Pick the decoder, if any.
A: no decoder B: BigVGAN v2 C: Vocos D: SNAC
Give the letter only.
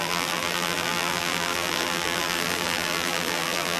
B